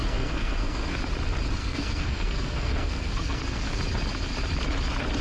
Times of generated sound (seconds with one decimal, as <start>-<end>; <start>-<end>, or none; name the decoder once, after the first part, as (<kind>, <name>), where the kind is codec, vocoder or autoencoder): 0.0-1.0 (codec, SNAC); 1.6-3.8